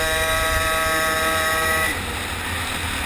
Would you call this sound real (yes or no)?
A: yes